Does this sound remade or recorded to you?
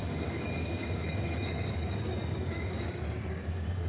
remade